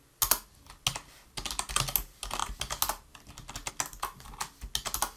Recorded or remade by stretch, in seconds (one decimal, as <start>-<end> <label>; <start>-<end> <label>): 0.0-5.2 recorded